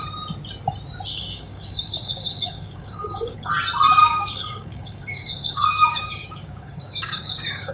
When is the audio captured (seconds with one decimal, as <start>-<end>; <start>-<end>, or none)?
0.0-1.1; 3.5-4.0